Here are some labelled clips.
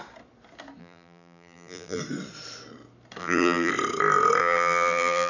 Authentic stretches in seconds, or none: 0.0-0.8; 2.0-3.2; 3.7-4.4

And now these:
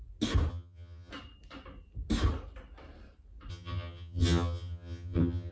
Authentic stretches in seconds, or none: 0.0-0.5; 1.1-3.5

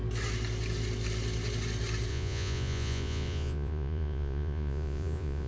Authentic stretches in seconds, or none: 0.0-2.1

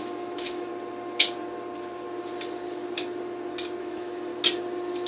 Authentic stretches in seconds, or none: 0.7-3.8; 4.3-5.1

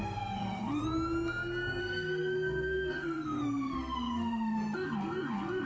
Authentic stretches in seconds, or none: 0.8-1.8

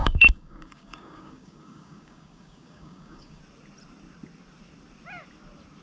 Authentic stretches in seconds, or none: 3.4-5.8

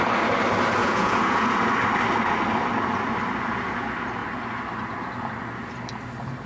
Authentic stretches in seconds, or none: 0.0-0.8; 1.5-6.5